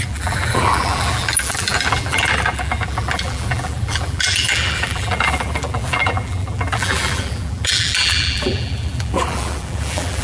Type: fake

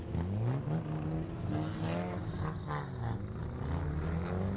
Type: real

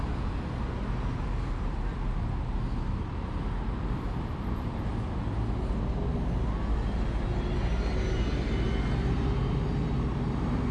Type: real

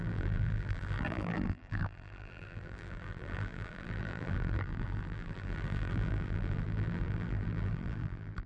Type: fake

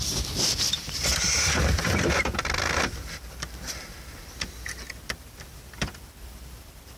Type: fake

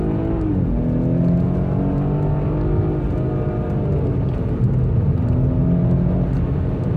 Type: real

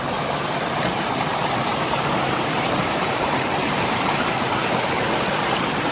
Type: fake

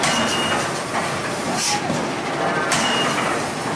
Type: fake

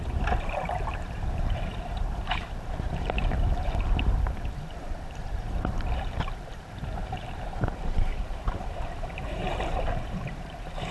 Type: fake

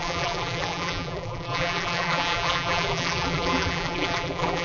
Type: fake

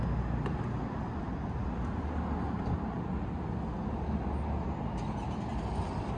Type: real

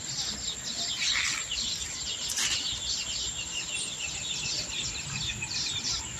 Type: fake